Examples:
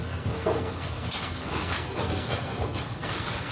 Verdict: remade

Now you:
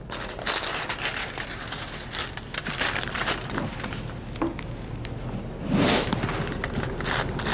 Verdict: recorded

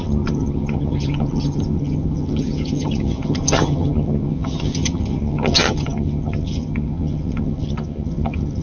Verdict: remade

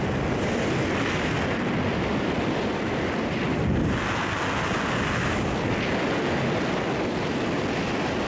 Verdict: recorded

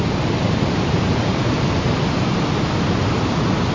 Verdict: recorded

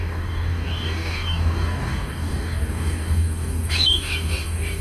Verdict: remade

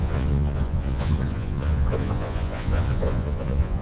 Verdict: remade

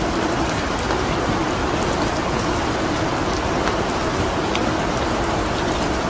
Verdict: recorded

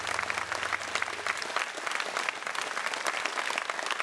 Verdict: recorded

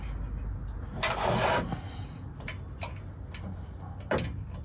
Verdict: recorded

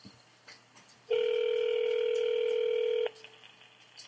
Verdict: recorded